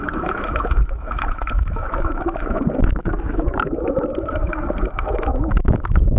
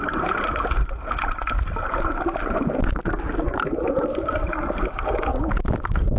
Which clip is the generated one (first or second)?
first